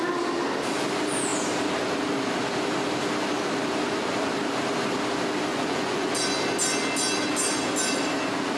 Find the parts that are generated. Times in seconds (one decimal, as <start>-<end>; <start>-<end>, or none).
5.5-6.1